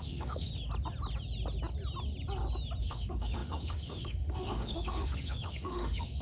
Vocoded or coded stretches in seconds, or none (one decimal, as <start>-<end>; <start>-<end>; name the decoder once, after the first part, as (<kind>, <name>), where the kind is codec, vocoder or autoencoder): 0.0-0.5 (autoencoder, DAC-VAE); 2.8-6.2